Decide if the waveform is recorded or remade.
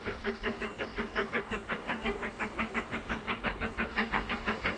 remade